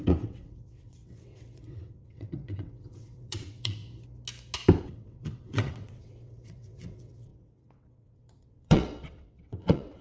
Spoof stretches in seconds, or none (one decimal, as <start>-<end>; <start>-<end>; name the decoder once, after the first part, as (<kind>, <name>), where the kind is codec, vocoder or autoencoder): 0.0-3.8 (vocoder, WaveNeXt); 4.8-10.0